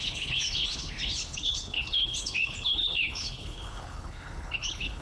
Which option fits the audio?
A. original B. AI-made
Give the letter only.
B